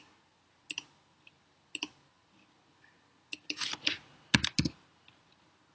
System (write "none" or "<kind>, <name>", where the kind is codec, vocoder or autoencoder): none